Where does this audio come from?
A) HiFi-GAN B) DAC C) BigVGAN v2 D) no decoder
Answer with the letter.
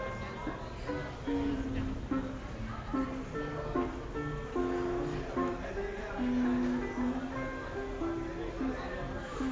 D